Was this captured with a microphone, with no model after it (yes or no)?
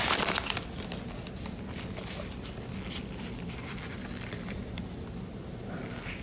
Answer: yes